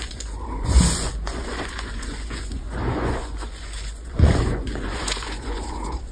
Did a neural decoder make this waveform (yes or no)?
yes